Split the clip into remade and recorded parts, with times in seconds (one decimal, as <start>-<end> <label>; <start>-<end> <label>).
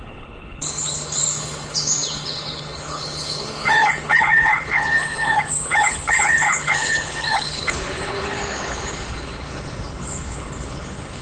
0.0-11.2 remade